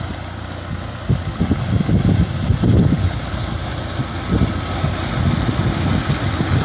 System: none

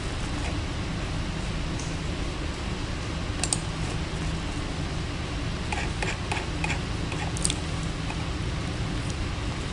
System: none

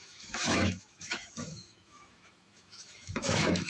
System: autoencoder, DAC-VAE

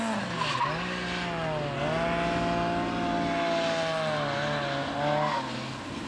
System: none